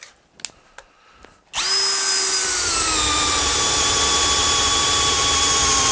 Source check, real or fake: real